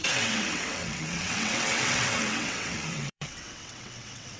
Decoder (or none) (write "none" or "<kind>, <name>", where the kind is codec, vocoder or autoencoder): vocoder, WaveNeXt